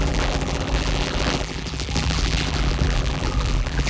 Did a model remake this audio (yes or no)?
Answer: yes